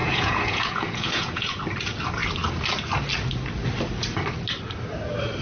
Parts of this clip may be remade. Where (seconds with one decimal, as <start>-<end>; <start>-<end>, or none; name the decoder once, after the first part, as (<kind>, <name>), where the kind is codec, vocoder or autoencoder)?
0.0-1.6 (vocoder, Vocos)